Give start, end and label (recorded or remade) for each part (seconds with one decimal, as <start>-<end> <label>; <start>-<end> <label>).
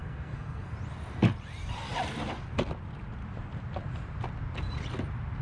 0.0-0.7 remade; 0.7-5.4 recorded